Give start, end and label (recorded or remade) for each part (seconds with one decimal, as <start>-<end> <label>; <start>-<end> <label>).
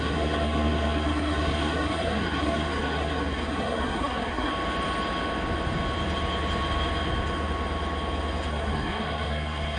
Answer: 0.0-4.5 remade; 4.5-8.5 recorded; 8.5-9.8 remade